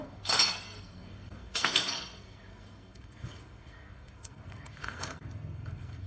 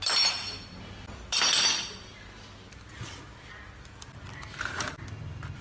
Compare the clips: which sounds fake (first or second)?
first